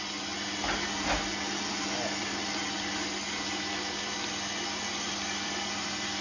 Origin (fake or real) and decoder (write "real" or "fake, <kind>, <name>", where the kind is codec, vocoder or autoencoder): real